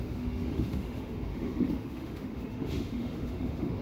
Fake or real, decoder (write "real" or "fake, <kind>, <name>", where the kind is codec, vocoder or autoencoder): fake, autoencoder, DAC-VAE